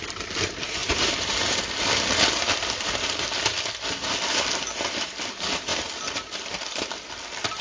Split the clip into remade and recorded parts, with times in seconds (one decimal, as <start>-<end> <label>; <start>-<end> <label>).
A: 0.0-7.6 remade